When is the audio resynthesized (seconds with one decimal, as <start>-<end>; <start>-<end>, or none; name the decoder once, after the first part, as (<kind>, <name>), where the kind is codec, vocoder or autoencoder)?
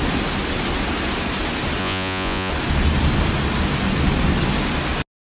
1.8-2.5 (vocoder, Vocos)